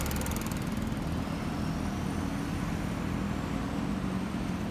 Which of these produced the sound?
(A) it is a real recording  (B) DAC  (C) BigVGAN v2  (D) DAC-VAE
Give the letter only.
A